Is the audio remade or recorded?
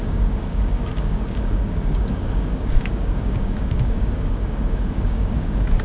remade